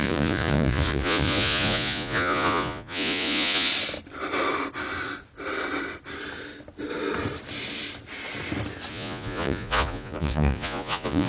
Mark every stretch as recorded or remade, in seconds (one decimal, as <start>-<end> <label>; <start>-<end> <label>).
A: 0.0-3.7 remade; 3.7-8.9 recorded; 8.9-11.3 remade